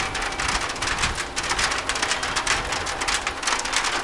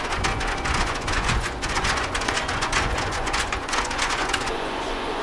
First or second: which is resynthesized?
second